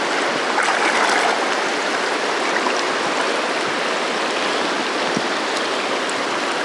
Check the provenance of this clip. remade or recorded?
recorded